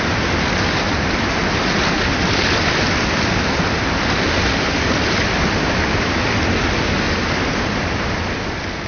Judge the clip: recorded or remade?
recorded